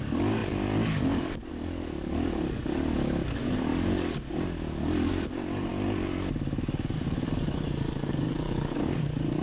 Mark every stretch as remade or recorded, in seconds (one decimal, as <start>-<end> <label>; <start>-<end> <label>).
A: 0.0-5.7 remade; 5.7-6.6 recorded; 6.6-9.4 remade